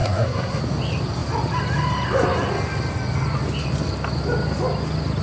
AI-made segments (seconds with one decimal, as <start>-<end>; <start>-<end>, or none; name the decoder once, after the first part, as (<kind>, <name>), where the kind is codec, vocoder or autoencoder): 0.0-0.6 (codec, SNAC)